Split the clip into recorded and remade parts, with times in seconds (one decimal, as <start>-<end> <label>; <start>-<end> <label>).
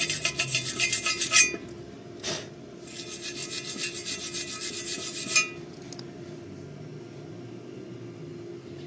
0.0-8.9 recorded